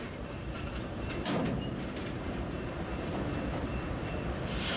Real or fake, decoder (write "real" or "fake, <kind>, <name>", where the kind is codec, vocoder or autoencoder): fake, vocoder, BigVGAN v2